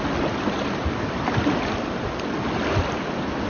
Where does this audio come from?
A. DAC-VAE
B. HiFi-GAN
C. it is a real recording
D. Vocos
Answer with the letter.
C